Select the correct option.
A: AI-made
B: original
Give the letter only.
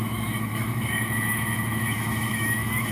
A